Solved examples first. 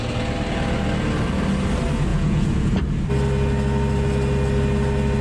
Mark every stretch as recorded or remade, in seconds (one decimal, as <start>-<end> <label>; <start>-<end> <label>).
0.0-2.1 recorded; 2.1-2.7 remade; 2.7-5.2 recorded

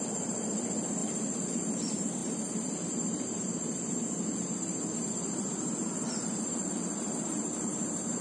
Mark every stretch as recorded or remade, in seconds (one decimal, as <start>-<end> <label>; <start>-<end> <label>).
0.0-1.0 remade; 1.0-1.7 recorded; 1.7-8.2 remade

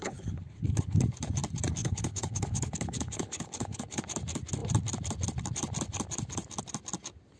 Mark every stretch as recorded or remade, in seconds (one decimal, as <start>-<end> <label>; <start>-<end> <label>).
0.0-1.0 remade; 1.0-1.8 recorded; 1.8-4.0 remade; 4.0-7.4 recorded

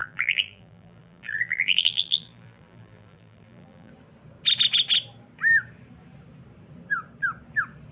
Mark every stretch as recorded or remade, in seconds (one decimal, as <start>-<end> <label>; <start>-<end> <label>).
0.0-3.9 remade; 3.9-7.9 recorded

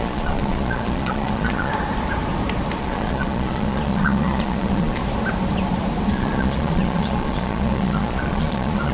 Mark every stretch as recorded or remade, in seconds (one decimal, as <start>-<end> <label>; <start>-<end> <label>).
0.0-1.7 remade; 1.7-2.8 recorded; 2.8-5.0 remade; 5.0-6.1 recorded; 6.1-8.9 remade